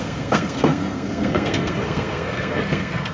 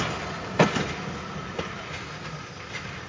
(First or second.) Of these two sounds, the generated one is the first